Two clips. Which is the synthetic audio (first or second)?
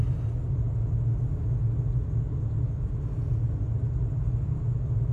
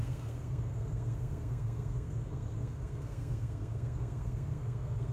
second